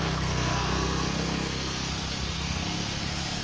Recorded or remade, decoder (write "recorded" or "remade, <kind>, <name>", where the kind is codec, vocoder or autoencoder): remade, codec, SNAC